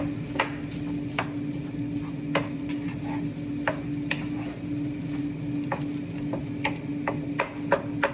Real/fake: real